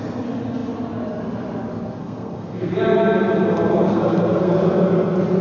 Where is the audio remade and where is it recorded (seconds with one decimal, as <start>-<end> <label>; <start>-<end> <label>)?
0.0-2.0 recorded; 2.0-2.7 remade; 2.7-3.9 recorded; 3.9-4.5 remade; 4.5-5.4 recorded